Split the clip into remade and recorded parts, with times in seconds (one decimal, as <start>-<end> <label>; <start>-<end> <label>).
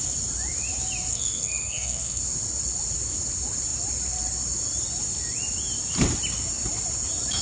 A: 0.0-1.1 recorded; 1.1-2.2 remade; 2.2-7.4 recorded